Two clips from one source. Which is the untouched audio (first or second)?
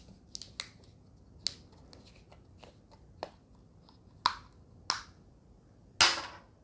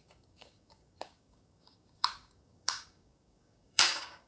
first